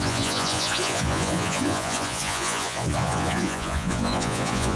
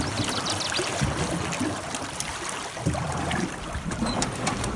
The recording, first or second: second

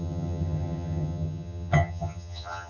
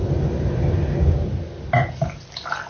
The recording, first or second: second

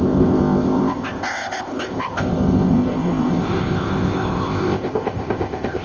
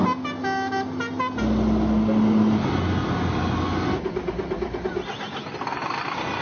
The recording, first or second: second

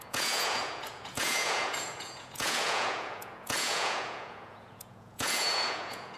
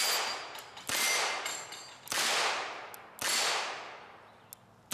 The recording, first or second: second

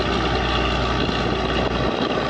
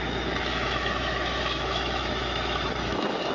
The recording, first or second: first